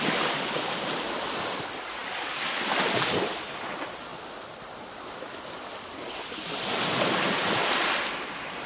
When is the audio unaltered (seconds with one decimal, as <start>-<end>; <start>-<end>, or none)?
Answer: 0.0-8.7